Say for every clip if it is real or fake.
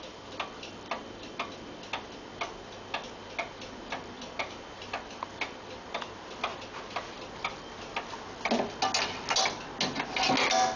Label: real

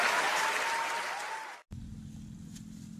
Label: real